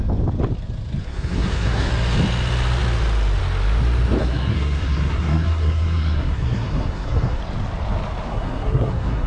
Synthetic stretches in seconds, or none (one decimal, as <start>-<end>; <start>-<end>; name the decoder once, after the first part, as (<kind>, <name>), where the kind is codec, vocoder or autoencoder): 1.0-1.9 (codec, SNAC); 4.2-7.4; 8.3-9.3